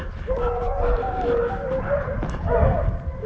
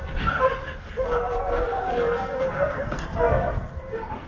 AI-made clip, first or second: second